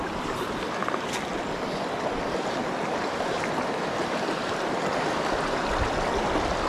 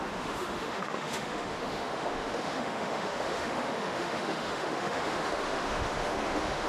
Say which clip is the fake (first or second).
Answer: second